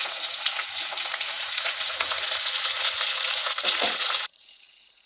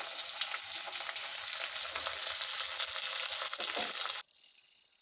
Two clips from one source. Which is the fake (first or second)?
first